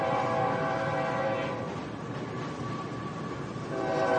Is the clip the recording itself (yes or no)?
yes